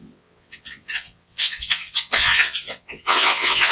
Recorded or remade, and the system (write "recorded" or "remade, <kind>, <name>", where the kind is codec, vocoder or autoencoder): remade, vocoder, WaveNeXt